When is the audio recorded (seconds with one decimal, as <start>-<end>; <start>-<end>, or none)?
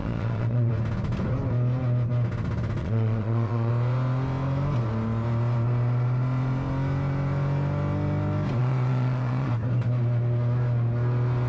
0.7-2.8; 3.7-8.6; 9.5-11.5